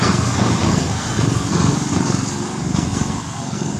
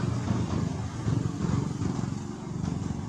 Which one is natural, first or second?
second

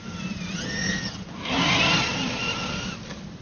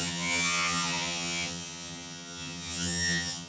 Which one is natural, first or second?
first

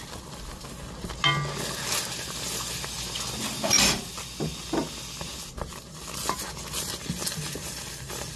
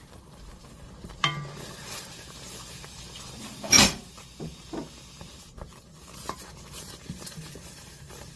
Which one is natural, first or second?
first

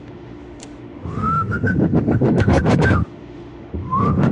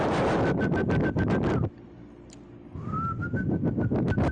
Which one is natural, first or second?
second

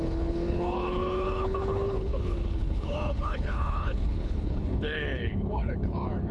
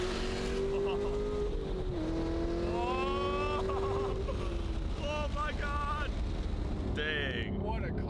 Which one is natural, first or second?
second